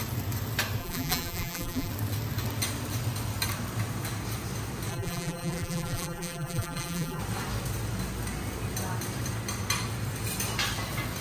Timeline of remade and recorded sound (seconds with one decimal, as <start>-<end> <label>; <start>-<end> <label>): 0.0-0.8 recorded; 0.8-1.9 remade; 1.9-4.9 recorded; 4.9-7.2 remade; 7.2-11.2 recorded